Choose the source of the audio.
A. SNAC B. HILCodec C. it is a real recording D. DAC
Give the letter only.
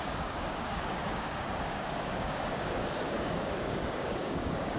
D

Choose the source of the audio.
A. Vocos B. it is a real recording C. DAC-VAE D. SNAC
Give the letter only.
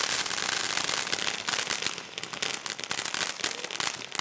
B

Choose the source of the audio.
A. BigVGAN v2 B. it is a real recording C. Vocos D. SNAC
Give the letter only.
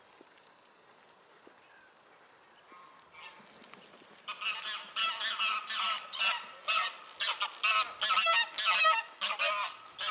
B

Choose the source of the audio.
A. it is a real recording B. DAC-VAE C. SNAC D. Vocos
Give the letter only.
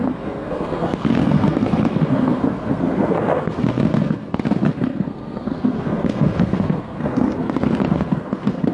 C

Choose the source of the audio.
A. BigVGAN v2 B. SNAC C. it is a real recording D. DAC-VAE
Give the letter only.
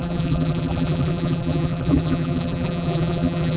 A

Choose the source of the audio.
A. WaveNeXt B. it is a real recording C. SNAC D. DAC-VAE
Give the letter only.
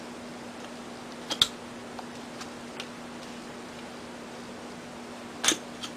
B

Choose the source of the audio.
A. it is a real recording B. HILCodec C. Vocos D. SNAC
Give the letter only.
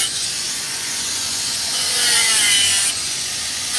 C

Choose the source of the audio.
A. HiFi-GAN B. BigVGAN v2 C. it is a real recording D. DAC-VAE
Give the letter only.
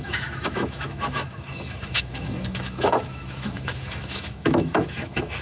D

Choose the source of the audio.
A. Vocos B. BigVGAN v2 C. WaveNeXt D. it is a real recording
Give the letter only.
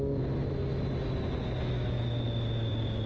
D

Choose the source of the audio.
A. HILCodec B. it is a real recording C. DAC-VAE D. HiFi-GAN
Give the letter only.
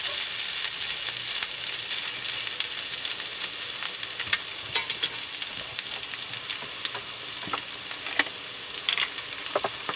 B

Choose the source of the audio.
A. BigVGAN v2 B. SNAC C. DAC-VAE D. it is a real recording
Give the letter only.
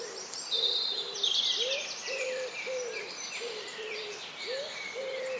D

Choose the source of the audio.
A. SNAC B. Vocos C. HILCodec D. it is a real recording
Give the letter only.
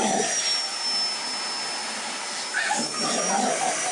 D